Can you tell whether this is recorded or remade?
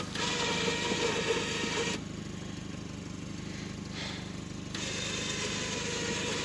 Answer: recorded